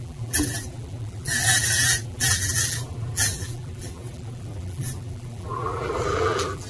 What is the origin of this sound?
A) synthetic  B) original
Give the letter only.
A